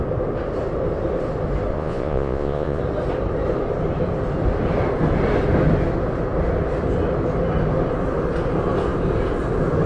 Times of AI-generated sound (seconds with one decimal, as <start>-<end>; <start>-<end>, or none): 1.7-2.8